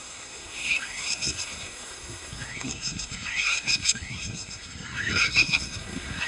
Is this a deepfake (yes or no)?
yes